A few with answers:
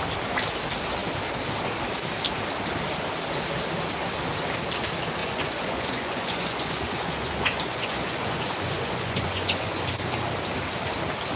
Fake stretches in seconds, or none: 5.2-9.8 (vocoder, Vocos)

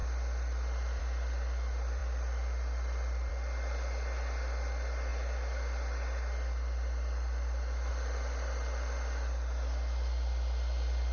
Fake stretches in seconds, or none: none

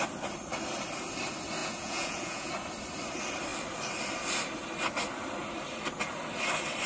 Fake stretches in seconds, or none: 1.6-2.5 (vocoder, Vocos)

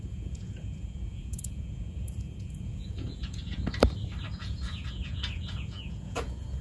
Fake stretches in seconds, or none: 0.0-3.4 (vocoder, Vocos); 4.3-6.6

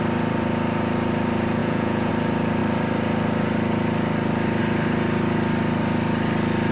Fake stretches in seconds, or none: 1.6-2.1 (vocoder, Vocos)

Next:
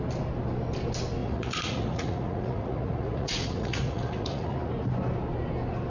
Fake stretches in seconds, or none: 1.2-4.7 (vocoder, Vocos)